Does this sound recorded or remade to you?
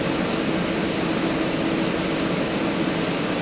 recorded